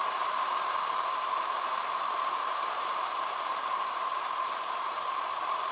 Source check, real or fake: fake